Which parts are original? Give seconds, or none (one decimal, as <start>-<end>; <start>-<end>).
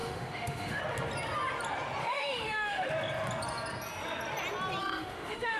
0.8-2.0; 2.9-4.8